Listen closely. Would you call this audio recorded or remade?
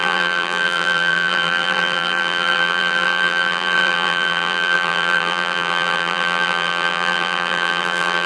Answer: remade